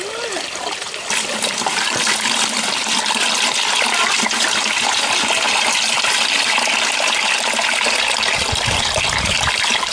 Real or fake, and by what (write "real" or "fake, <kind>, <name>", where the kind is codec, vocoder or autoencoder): real